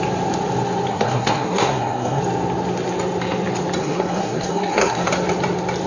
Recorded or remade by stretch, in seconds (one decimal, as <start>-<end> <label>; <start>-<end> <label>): 0.0-0.9 recorded; 0.9-2.2 remade; 2.2-3.8 recorded; 3.8-5.1 remade; 5.1-5.9 recorded